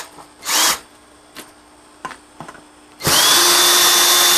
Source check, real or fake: real